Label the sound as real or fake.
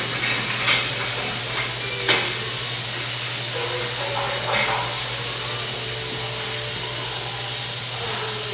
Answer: real